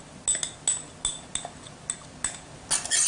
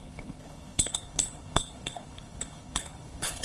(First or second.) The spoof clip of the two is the second